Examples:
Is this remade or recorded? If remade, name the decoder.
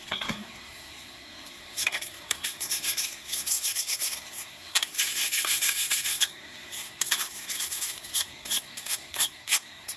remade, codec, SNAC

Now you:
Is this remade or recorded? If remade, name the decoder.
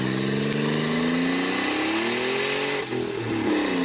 recorded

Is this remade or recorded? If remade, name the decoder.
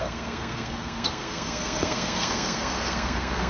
remade, codec, SNAC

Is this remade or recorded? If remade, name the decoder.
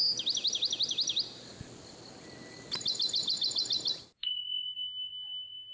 recorded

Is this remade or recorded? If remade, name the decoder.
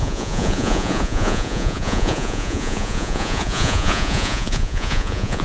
remade, vocoder, Vocos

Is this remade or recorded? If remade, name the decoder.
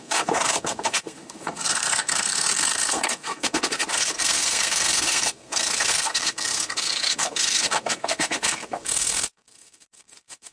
remade, codec, SNAC